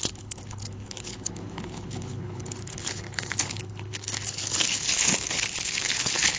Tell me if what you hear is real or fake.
fake